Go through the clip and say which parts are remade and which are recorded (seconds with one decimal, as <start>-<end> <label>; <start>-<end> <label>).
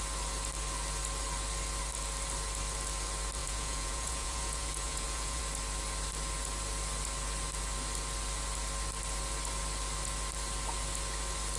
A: 0.0-3.4 recorded; 3.4-5.4 remade; 5.4-11.6 recorded